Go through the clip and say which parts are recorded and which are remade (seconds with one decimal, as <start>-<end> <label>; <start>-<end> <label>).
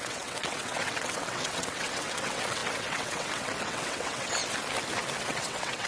0.0-4.4 remade; 4.4-5.2 recorded; 5.2-5.9 remade